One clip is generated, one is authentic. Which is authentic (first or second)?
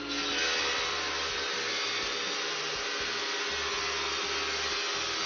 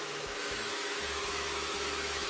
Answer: first